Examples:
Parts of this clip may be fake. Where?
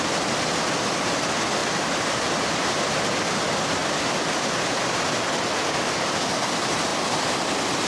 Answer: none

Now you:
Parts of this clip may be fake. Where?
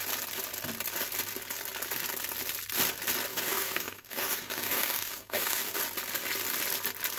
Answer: 3.3-5.8